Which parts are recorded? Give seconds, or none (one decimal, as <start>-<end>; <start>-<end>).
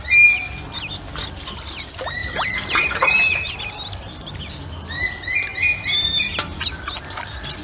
0.0-2.2; 4.4-5.5; 6.3-7.6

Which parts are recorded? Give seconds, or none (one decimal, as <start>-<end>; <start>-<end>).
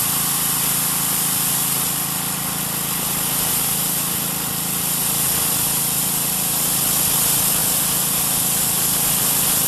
0.0-9.7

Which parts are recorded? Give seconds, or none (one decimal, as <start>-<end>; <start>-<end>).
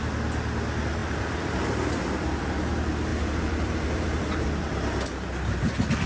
0.0-1.0; 2.5-3.1